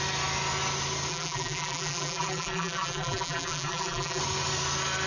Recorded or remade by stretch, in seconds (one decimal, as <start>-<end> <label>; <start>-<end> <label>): 0.0-1.1 recorded; 1.1-4.2 remade; 4.2-5.1 recorded